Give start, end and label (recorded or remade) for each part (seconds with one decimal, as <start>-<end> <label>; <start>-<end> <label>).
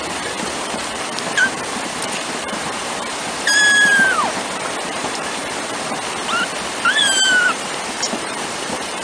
0.0-5.4 remade; 5.4-7.0 recorded; 7.0-9.0 remade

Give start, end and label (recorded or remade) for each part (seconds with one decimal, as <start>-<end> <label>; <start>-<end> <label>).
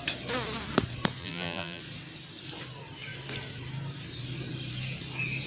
0.0-1.2 recorded; 1.2-1.8 remade; 1.8-5.5 recorded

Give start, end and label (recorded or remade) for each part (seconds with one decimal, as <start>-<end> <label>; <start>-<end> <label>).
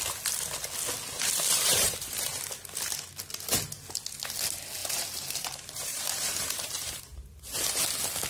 0.0-1.2 recorded; 1.2-2.3 remade; 2.3-4.8 recorded; 4.8-7.8 remade; 7.8-8.3 recorded